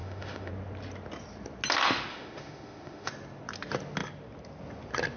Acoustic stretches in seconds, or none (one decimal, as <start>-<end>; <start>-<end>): 0.5-2.1; 3.1-5.2